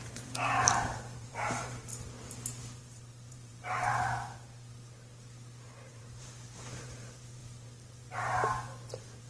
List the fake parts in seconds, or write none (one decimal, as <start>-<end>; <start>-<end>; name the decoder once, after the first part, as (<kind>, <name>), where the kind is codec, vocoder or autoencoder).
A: 0.0-1.9 (vocoder, BigVGAN v2); 2.8-3.9; 5.9-9.3